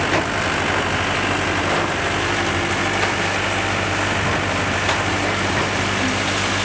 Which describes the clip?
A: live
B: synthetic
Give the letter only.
A